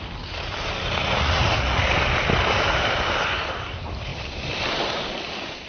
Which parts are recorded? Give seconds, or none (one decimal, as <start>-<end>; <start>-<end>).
0.0-1.0; 1.8-5.7